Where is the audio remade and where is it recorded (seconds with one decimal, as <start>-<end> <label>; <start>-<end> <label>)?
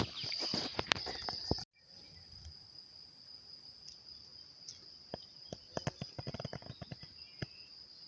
0.0-0.7 recorded; 0.7-3.3 remade; 3.3-8.1 recorded